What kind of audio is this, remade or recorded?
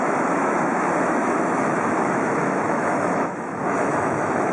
remade